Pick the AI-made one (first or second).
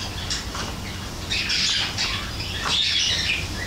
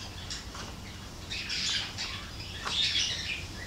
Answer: second